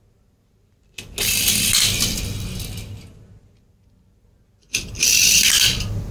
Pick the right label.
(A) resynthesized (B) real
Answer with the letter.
B